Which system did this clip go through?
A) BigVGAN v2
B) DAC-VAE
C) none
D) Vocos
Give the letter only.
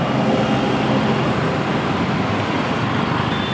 C